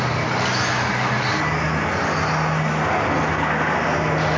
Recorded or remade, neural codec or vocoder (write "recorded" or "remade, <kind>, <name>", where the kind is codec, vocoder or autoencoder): recorded